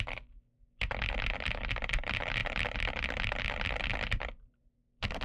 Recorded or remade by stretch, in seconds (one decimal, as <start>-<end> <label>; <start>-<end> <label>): 0.0-5.2 recorded